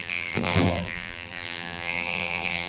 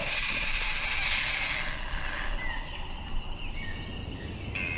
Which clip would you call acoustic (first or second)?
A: second